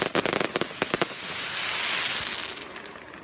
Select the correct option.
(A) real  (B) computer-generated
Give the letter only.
A